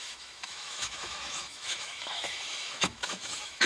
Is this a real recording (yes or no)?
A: no